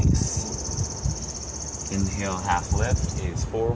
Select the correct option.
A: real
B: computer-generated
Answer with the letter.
A